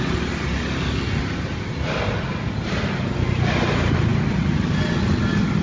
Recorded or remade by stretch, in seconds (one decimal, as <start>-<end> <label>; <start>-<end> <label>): 0.0-5.6 recorded